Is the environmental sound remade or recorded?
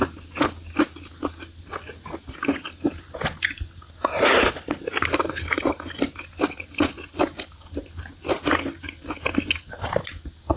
recorded